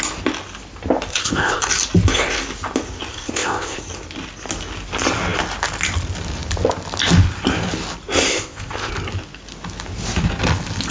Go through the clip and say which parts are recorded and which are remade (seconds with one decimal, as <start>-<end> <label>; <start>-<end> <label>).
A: 0.0-1.1 recorded; 1.1-1.6 remade; 1.6-3.1 recorded; 3.1-3.8 remade; 3.8-8.3 recorded; 8.3-8.9 remade; 8.9-10.9 recorded